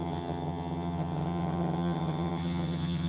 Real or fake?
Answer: fake